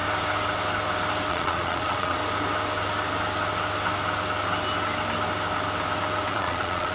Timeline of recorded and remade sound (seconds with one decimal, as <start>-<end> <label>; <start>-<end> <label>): 0.0-1.3 recorded; 1.3-2.2 remade; 2.2-6.3 recorded; 6.3-6.9 remade